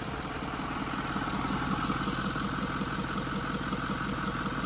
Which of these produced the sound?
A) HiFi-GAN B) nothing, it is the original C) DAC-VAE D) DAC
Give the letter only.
B